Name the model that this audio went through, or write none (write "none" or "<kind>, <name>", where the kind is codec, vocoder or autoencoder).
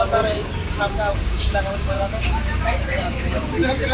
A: codec, DAC